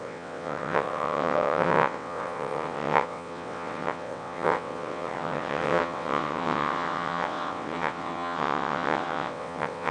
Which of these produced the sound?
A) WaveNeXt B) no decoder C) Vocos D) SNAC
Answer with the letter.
A